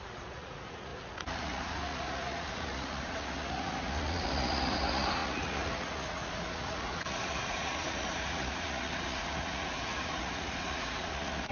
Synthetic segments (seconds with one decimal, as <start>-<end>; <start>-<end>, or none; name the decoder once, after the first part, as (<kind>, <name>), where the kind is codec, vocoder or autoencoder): 0.0-11.5 (vocoder, Vocos)